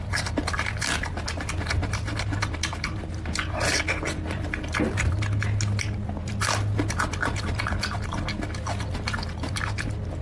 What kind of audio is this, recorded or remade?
recorded